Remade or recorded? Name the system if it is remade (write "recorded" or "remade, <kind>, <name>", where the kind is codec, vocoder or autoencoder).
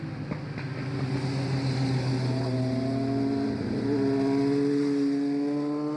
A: recorded